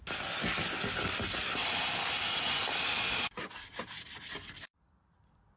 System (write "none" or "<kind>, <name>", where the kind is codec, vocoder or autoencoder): none